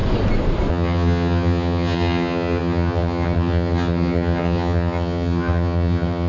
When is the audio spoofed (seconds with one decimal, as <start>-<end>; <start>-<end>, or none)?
0.7-6.3